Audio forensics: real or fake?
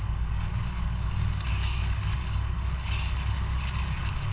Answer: fake